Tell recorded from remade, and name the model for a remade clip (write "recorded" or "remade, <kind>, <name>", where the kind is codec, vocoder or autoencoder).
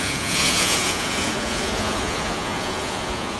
remade, vocoder, Vocos